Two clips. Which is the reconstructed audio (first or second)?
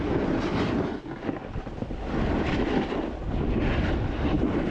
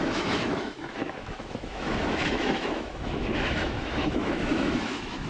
second